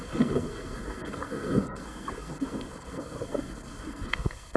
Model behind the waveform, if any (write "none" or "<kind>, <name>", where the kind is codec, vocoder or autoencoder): codec, SNAC